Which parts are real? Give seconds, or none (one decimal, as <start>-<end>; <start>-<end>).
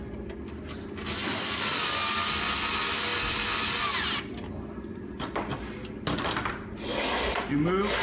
0.0-1.2; 1.9-3.1; 3.8-8.0